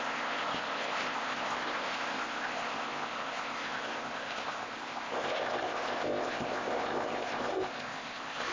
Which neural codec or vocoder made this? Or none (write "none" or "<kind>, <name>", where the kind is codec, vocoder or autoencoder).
codec, ZipCodec